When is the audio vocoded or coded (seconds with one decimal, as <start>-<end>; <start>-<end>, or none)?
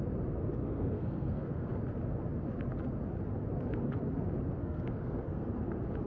0.6-1.8; 4.6-5.5